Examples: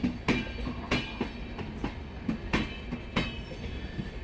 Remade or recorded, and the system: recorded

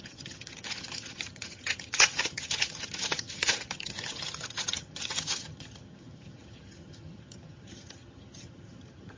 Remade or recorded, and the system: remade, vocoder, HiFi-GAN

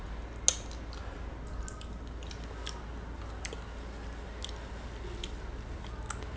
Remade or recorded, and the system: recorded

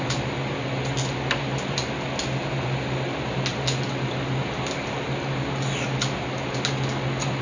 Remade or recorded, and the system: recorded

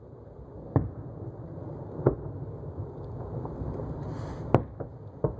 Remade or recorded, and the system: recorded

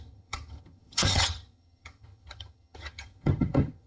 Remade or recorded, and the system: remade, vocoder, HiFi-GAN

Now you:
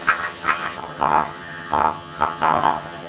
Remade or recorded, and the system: remade, vocoder, HiFi-GAN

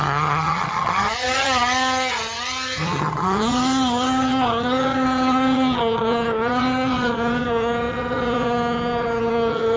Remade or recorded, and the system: remade, vocoder, HiFi-GAN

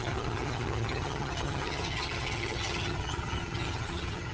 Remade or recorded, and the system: remade, vocoder, HiFi-GAN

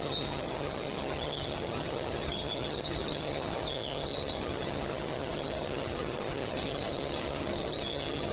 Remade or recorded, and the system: remade, vocoder, HiFi-GAN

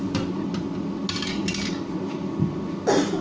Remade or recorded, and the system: recorded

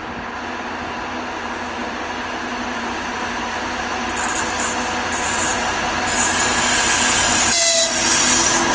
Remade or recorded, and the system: recorded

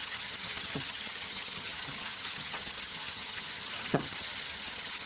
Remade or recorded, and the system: remade, vocoder, HiFi-GAN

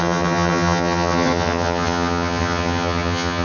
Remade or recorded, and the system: remade, vocoder, HiFi-GAN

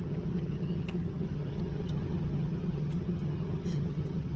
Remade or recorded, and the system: remade, vocoder, HiFi-GAN